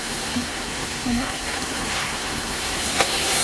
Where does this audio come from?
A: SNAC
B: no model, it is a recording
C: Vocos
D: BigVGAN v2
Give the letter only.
A